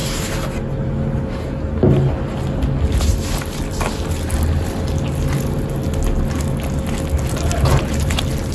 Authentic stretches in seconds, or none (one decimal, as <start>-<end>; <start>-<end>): 0.0-8.5